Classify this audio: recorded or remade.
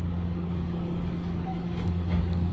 remade